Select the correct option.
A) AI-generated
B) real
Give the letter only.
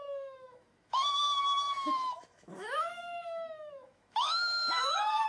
A